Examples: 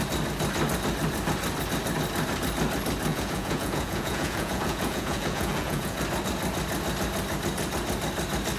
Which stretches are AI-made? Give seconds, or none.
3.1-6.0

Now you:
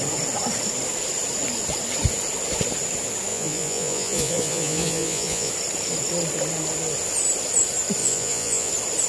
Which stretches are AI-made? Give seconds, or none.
3.3-5.5; 8.0-8.7

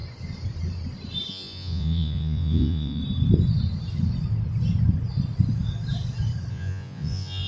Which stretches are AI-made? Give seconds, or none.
1.3-3.0; 6.5-7.5

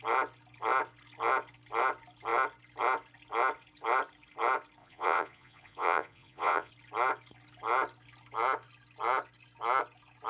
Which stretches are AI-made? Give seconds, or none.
4.8-6.7